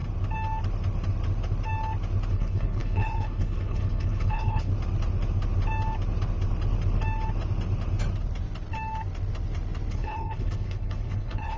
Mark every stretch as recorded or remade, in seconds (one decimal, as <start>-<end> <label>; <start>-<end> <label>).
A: 0.0-2.3 recorded; 2.3-4.7 remade; 4.7-9.9 recorded; 9.9-11.6 remade